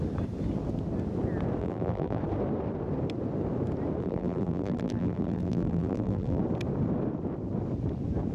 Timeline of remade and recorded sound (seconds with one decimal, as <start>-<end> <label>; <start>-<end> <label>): 0.0-1.6 recorded; 1.6-2.2 remade; 2.2-4.0 recorded; 4.0-6.4 remade; 6.4-8.3 recorded